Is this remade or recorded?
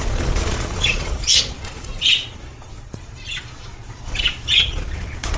remade